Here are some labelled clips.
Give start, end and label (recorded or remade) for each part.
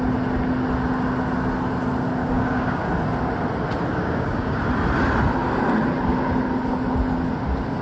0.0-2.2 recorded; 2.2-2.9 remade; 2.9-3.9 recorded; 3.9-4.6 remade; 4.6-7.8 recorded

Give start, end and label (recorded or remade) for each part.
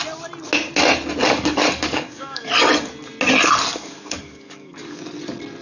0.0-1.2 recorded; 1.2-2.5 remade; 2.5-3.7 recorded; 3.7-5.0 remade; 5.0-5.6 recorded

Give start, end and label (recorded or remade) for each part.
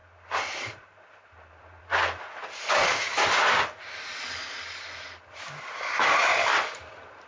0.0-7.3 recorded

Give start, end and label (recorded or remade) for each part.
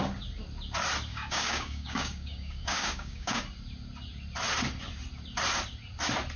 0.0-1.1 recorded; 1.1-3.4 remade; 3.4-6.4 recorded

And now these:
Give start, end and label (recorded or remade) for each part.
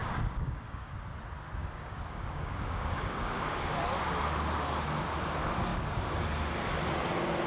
0.0-0.9 remade; 0.9-1.6 recorded; 1.6-3.8 remade; 3.8-5.7 recorded; 5.7-6.2 remade; 6.2-7.5 recorded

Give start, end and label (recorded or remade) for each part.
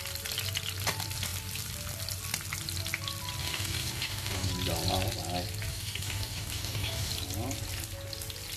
0.0-3.4 recorded; 3.4-4.5 remade; 4.5-5.7 recorded; 5.7-7.1 remade; 7.1-8.6 recorded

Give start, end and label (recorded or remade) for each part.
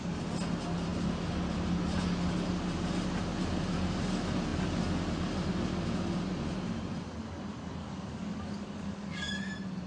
0.0-7.8 recorded; 7.8-9.3 remade; 9.3-9.9 recorded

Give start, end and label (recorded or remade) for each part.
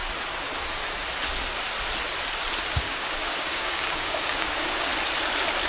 0.0-2.7 recorded; 2.7-4.9 remade; 4.9-5.7 recorded